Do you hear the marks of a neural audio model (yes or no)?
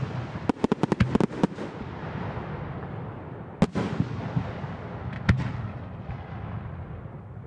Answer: no